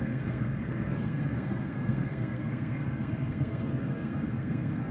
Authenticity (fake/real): fake